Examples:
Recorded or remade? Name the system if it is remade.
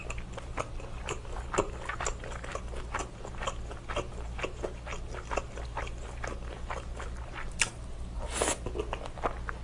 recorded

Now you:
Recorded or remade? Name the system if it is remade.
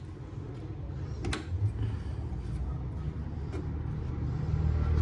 recorded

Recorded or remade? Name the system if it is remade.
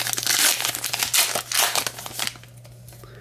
recorded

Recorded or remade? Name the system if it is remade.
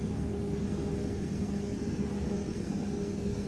remade, codec, SNAC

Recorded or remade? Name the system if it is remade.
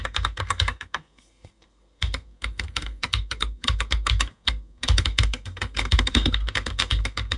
remade, codec, SNAC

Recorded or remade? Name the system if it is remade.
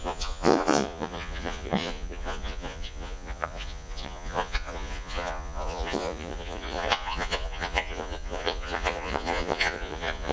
remade, vocoder, Vocos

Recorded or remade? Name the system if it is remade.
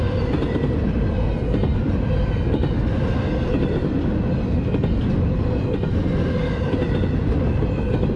recorded